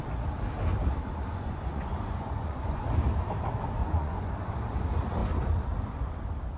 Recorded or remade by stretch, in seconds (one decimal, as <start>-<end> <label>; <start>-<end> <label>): 0.0-1.3 recorded; 1.3-2.8 remade; 2.8-3.8 recorded; 3.8-4.5 remade; 4.5-6.6 recorded